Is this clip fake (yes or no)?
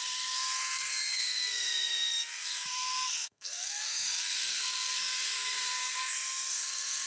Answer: yes